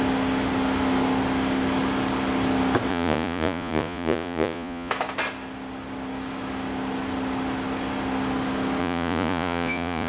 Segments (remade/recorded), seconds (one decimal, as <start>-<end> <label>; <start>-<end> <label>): 0.0-2.9 recorded; 2.9-4.9 remade; 4.9-8.8 recorded; 8.8-10.1 remade